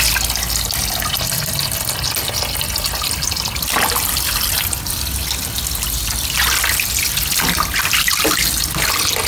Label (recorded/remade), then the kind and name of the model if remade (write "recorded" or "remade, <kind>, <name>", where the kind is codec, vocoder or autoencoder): recorded